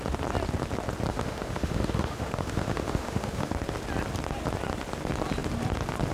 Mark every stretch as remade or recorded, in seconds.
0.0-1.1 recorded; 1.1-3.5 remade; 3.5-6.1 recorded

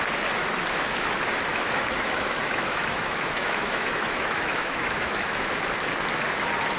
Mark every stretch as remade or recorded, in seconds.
0.0-1.5 recorded; 1.5-5.6 remade; 5.6-6.8 recorded

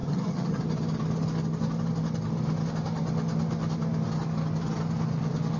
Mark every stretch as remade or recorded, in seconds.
0.0-0.6 remade; 0.6-5.6 recorded

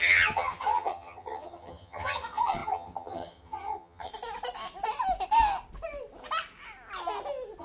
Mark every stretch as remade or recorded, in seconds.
0.0-4.1 remade; 4.1-7.6 recorded

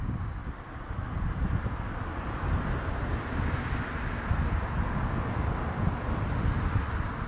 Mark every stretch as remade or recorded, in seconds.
0.0-7.3 recorded

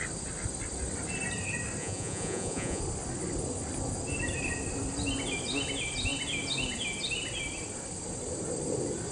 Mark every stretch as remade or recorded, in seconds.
0.0-1.8 recorded; 1.8-2.8 remade; 2.8-9.1 recorded

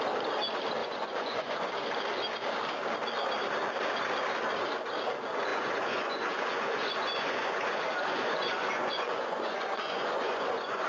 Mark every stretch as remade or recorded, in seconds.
0.0-0.8 recorded; 0.8-1.7 remade; 1.7-5.5 recorded; 5.5-10.9 remade